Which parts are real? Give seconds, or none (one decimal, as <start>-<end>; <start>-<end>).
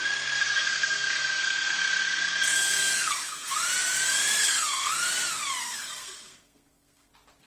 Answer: 0.0-0.4; 3.5-4.4; 4.9-5.6; 7.1-7.5